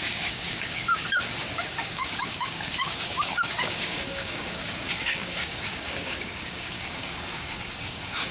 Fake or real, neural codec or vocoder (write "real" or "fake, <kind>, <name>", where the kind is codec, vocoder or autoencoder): fake, codec, DAC